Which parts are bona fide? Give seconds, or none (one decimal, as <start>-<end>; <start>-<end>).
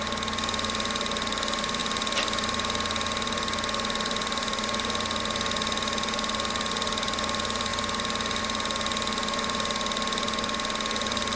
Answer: 0.0-11.4